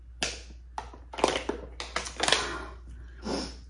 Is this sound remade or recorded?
recorded